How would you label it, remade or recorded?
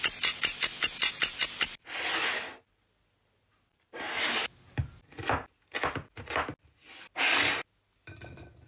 recorded